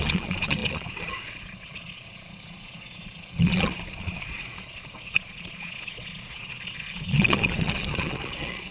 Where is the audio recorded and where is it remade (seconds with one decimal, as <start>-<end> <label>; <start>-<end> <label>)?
0.0-8.7 remade